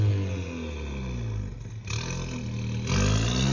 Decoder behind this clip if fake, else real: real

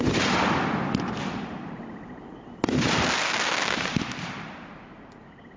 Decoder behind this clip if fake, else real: real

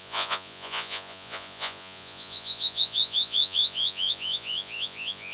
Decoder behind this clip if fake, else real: fake, vocoder, Vocos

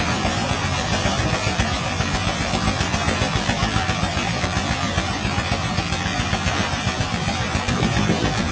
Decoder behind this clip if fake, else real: fake, vocoder, BigVGAN v2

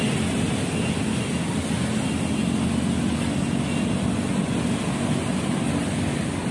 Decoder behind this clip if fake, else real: real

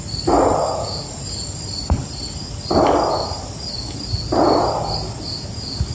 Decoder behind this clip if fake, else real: real